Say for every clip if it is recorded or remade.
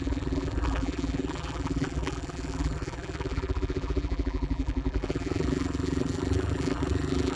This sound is remade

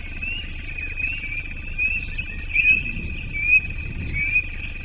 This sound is recorded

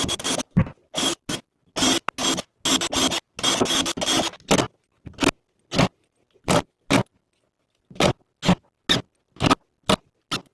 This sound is recorded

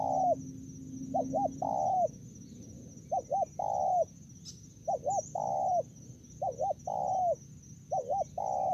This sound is recorded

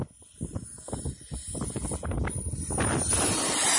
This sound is recorded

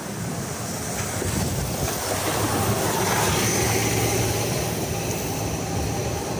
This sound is recorded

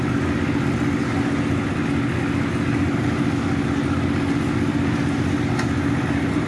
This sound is recorded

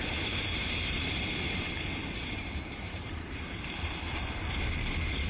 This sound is remade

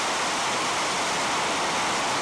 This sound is recorded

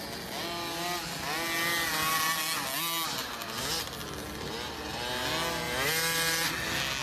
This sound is recorded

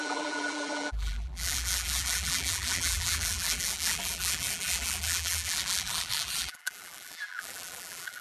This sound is remade